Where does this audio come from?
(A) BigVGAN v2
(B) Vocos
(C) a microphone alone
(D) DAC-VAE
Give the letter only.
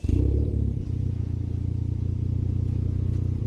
A